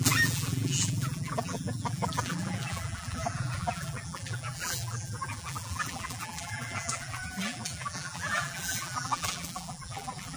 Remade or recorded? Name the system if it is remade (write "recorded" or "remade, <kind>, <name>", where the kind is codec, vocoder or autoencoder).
remade, vocoder, BigVGAN v2